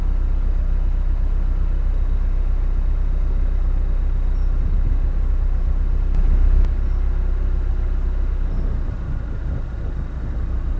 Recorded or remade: recorded